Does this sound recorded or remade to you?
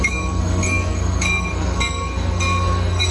remade